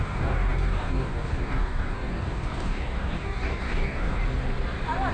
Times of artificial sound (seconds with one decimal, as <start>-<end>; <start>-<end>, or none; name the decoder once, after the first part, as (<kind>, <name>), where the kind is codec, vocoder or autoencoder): 0.0-4.2 (codec, DAC)